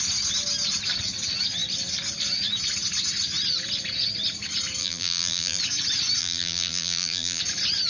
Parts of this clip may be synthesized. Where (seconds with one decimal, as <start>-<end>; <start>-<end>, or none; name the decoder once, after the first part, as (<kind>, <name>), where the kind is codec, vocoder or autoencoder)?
4.8-5.6 (vocoder, BigVGAN v2); 6.2-7.4